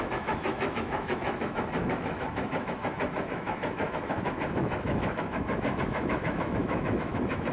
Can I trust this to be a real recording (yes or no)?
no